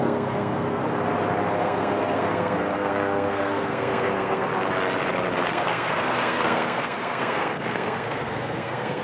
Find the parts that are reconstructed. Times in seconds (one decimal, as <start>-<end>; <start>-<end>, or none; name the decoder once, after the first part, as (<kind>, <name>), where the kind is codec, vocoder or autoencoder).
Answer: 0.0-0.8 (codec, SNAC); 1.6-4.5; 5.5-9.0